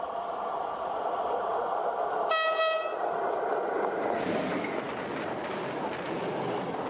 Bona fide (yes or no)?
yes